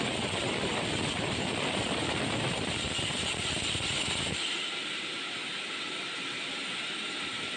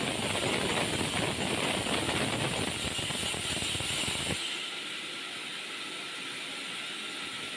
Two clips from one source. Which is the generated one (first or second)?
first